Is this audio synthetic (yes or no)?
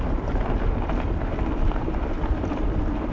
no